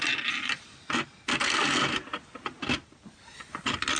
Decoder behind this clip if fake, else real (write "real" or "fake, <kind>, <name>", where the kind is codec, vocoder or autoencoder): real